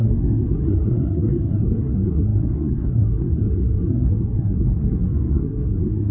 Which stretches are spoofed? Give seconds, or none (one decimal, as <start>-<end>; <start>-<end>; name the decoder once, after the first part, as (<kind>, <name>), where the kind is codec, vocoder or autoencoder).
0.0-6.1 (codec, SNAC)